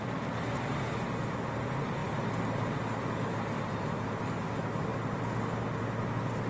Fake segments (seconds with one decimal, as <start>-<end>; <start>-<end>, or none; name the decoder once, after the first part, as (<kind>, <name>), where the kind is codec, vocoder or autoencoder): none